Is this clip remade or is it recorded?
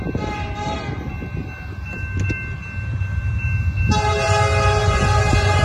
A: recorded